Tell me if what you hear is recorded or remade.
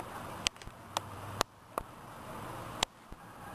recorded